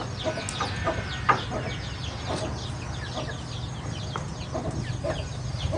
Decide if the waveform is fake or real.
real